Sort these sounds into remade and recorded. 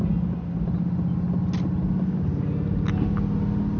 recorded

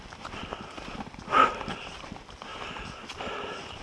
recorded